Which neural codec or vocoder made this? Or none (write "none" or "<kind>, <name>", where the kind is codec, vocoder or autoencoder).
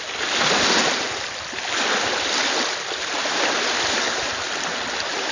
none